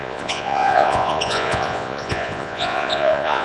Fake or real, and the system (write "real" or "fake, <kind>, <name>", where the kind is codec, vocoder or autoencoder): fake, vocoder, Vocos